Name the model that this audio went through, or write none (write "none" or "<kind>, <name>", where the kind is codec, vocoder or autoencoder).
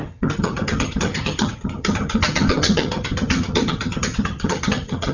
vocoder, HiFi-GAN